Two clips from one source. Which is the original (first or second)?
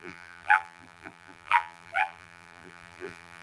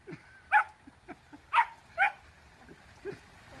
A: second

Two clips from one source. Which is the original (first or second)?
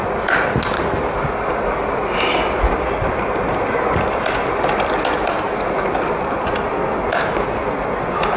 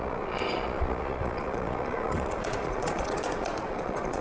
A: first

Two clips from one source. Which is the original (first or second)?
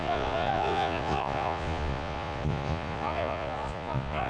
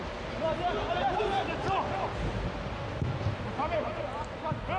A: second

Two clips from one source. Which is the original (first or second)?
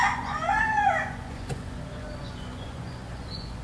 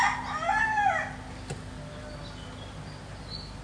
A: second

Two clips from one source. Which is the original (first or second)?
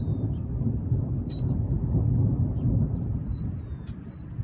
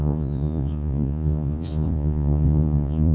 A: first